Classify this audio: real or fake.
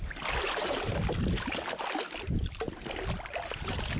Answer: real